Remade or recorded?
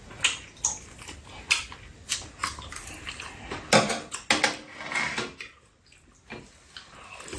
recorded